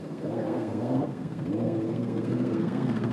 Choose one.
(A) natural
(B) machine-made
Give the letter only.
B